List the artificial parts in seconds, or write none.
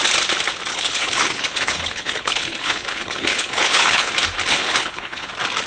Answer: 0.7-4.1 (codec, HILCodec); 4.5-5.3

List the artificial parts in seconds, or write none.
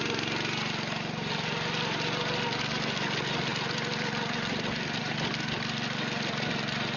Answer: none